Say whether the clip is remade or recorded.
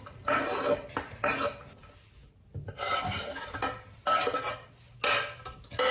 recorded